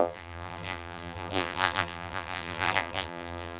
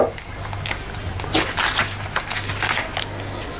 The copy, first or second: first